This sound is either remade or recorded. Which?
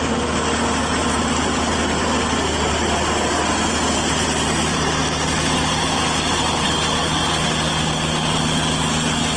recorded